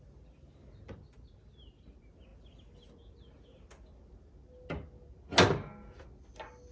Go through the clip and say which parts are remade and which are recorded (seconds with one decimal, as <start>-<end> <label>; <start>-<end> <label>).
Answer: 0.0-6.7 recorded